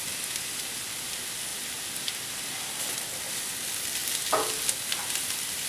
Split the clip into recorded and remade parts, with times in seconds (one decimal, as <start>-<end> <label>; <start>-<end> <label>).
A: 0.0-4.0 remade; 4.0-5.2 recorded; 5.2-5.7 remade